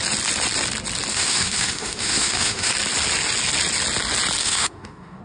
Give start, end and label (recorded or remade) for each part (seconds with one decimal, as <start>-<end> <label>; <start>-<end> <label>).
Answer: 0.0-1.1 recorded; 1.1-2.7 remade; 2.7-4.4 recorded; 4.4-5.2 remade